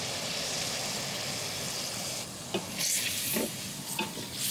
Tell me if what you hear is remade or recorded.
recorded